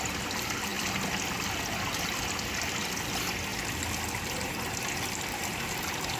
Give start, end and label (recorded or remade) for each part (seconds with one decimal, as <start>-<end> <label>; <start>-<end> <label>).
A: 0.0-6.2 recorded